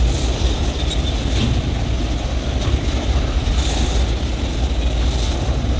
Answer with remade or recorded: recorded